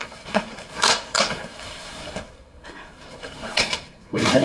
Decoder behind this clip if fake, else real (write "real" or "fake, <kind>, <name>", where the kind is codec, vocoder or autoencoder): fake, codec, SNAC